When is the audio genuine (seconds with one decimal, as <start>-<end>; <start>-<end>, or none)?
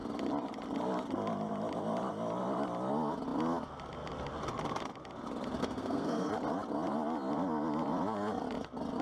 0.0-5.6; 6.3-9.0